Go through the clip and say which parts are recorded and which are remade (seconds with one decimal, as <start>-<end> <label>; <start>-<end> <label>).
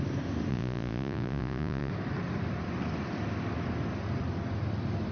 0.0-0.5 recorded; 0.5-1.9 remade; 1.9-5.1 recorded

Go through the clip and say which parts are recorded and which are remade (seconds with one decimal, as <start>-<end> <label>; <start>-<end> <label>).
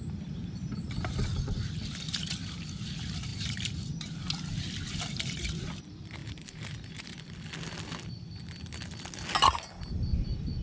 0.0-3.3 recorded; 3.3-4.2 remade; 4.2-6.2 recorded; 6.2-7.2 remade; 7.2-10.6 recorded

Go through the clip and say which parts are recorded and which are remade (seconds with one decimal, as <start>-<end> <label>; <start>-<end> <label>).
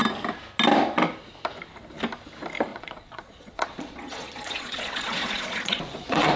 0.0-2.7 recorded; 2.7-6.4 remade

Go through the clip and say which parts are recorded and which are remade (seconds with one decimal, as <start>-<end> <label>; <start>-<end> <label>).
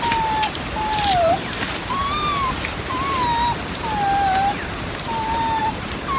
0.0-6.2 recorded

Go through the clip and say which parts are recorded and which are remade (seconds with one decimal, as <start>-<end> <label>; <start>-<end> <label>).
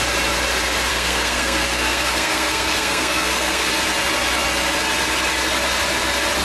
0.0-0.9 recorded; 0.9-3.7 remade; 3.7-6.4 recorded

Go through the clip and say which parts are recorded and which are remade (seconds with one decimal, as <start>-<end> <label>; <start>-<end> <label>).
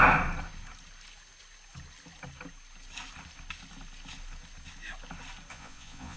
0.0-5.5 recorded; 5.5-6.2 remade